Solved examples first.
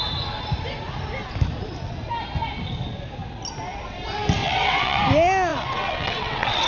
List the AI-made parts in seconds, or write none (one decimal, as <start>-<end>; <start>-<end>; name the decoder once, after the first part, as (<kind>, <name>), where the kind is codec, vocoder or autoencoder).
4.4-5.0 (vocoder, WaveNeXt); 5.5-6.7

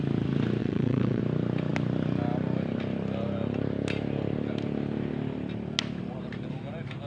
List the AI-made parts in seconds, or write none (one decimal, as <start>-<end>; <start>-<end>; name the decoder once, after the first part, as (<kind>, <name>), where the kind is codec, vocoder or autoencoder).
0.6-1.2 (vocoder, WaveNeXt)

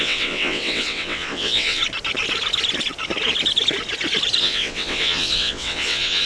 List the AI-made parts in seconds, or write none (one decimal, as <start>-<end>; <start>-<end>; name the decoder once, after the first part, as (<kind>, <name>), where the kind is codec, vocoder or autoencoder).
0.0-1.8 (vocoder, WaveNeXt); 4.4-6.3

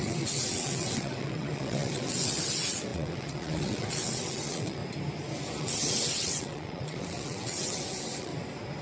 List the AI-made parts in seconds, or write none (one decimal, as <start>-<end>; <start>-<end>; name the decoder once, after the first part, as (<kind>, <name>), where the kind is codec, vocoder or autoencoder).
0.0-4.8 (vocoder, WaveNeXt); 5.6-8.3